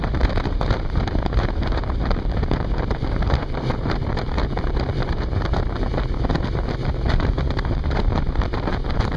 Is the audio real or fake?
fake